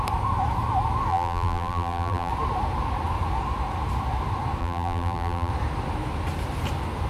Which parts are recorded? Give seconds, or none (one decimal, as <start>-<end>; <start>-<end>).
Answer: 0.0-1.1; 2.3-4.6; 5.5-7.1